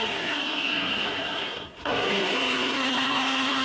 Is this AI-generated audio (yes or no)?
yes